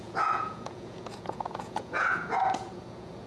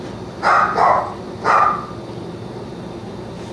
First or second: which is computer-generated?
first